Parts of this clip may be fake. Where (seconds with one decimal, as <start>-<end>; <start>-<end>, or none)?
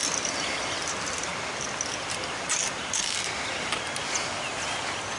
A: 0.0-1.3; 3.6-5.2